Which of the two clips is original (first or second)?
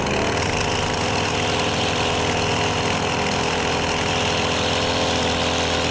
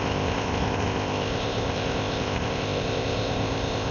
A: first